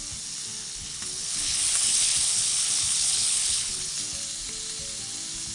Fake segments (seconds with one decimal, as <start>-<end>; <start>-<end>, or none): 0.6-3.9